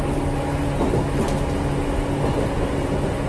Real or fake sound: real